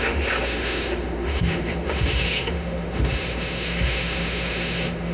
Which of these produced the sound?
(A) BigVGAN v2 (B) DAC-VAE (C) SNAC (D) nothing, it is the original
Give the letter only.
B